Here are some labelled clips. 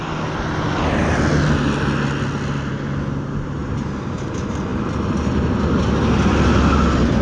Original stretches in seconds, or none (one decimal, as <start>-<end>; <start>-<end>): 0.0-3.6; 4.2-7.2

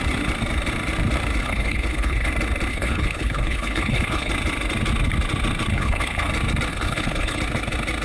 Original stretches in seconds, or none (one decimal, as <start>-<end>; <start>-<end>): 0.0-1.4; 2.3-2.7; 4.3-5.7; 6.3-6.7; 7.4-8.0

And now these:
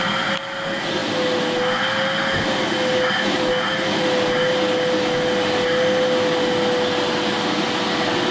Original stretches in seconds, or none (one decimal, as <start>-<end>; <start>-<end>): 0.0-8.3